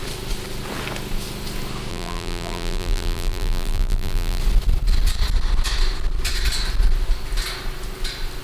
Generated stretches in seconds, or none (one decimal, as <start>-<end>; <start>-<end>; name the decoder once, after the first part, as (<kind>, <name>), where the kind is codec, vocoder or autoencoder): 1.9-4.4 (vocoder, BigVGAN v2)